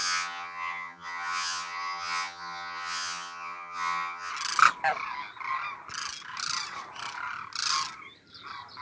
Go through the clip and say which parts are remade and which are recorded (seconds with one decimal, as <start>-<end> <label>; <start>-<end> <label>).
0.0-4.3 remade; 4.3-8.8 recorded